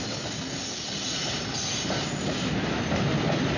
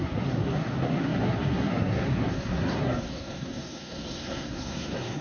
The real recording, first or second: first